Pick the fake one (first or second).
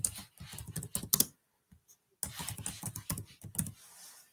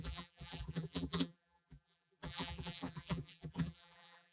second